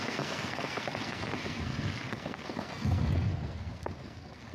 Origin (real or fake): fake